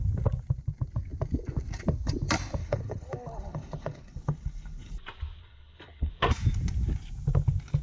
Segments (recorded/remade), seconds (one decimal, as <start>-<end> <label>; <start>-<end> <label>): 0.0-2.6 recorded; 2.6-4.9 remade; 4.9-5.4 recorded; 5.4-6.1 remade; 6.1-7.8 recorded